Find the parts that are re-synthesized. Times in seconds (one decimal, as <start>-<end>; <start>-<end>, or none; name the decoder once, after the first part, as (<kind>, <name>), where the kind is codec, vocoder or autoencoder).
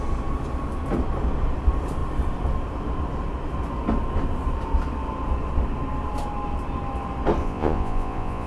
7.4-8.5 (vocoder, Vocos)